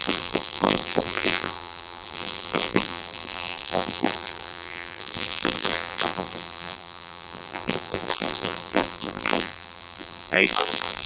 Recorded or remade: remade